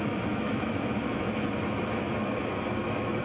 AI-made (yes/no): yes